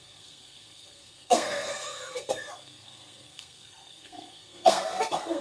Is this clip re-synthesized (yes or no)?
yes